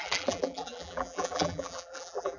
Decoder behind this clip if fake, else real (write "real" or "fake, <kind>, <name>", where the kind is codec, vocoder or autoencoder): fake, vocoder, BigVGAN v2